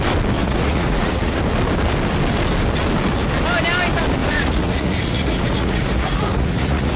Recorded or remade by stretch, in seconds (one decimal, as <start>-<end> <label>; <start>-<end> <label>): 0.0-0.4 recorded; 0.4-1.4 remade; 1.4-4.2 recorded; 4.2-7.0 remade